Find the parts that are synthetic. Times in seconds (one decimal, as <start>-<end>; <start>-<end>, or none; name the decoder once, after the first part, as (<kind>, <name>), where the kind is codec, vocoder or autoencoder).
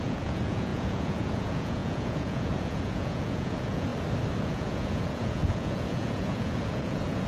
0.0-3.9 (vocoder, Vocos); 4.4-7.3